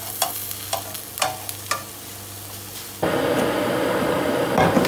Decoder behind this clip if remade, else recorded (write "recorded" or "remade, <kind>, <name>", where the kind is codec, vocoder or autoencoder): recorded